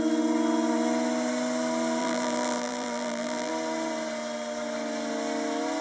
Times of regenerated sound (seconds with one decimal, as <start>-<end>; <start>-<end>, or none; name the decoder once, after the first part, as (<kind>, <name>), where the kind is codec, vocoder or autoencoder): 2.0-3.5 (vocoder, BigVGAN v2)